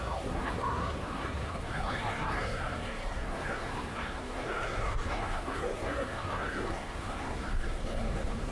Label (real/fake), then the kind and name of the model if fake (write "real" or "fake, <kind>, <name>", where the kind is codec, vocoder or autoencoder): fake, codec, SNAC